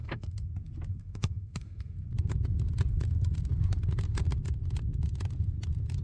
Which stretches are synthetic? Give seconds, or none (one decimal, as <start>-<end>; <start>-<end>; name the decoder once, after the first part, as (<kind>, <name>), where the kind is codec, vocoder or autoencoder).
0.0-0.5 (codec, SNAC); 0.9-1.9